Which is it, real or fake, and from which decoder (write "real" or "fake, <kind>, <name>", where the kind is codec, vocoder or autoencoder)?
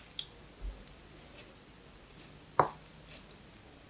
real